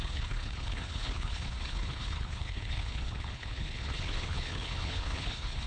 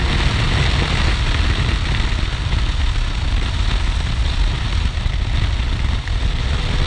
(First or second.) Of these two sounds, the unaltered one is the second